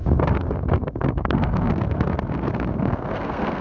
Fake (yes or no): yes